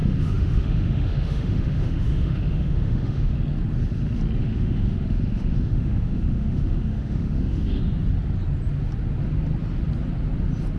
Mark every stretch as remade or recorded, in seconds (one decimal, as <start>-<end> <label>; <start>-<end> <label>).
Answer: 0.0-3.3 remade; 3.3-4.4 recorded; 4.4-7.8 remade; 7.8-10.8 recorded